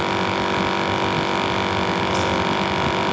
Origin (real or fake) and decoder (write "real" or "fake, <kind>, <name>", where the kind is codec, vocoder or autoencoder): real